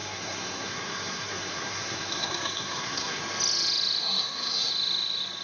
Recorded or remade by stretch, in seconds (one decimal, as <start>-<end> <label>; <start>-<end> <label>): 0.0-3.2 remade; 3.2-4.0 recorded; 4.0-4.7 remade; 4.7-5.4 recorded